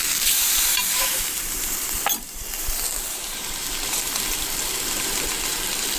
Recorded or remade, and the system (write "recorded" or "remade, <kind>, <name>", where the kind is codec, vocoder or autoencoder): remade, vocoder, BigVGAN v2